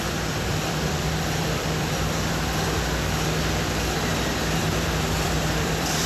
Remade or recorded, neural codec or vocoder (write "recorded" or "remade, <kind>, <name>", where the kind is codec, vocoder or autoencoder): remade, vocoder, BigVGAN v2